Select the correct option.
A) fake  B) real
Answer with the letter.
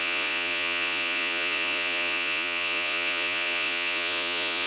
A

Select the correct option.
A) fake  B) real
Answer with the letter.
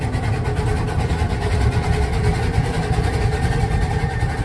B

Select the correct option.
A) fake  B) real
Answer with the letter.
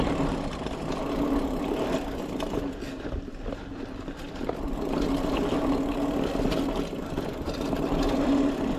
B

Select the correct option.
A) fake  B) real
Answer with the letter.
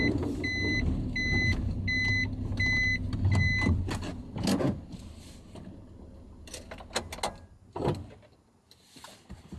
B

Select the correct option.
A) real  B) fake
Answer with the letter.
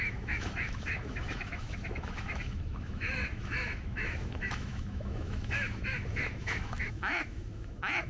B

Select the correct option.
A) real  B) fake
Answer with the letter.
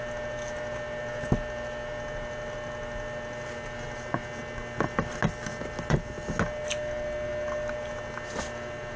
A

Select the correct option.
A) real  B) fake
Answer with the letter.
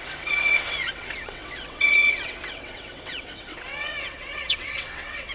B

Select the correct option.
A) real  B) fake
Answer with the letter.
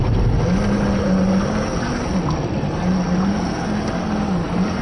A